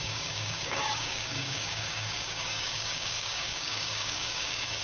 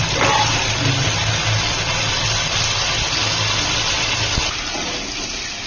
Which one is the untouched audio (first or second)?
second